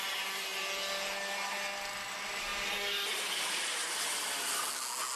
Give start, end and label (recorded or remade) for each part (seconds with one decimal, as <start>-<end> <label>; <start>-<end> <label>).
0.0-5.2 recorded